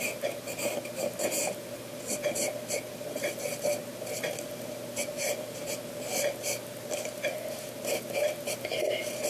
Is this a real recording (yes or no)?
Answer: yes